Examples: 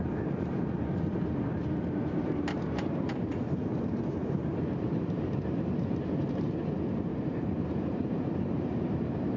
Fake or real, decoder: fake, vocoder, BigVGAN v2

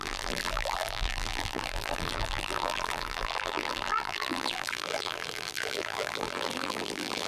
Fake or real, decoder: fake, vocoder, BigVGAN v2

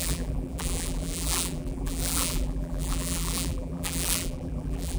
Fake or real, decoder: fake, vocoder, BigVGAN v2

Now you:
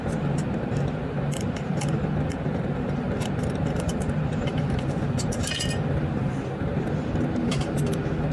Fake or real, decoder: fake, vocoder, BigVGAN v2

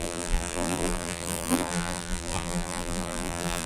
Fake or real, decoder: fake, vocoder, BigVGAN v2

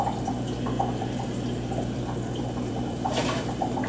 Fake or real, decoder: fake, vocoder, BigVGAN v2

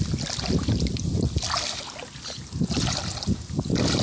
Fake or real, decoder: real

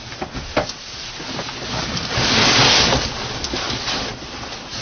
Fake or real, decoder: real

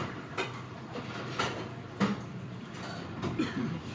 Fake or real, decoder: fake, vocoder, BigVGAN v2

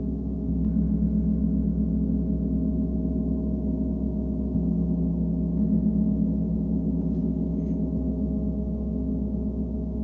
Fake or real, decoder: real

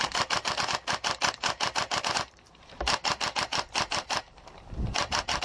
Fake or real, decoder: fake, vocoder, BigVGAN v2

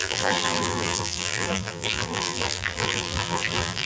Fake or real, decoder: fake, vocoder, BigVGAN v2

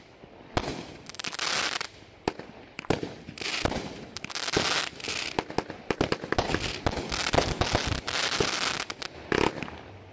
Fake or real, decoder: real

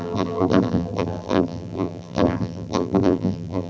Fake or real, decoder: fake, vocoder, BigVGAN v2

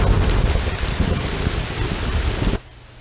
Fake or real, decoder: real